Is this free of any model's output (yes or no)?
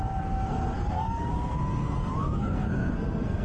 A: no